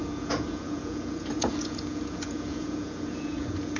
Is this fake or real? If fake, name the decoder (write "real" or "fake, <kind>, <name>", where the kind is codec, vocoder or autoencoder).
fake, vocoder, Vocos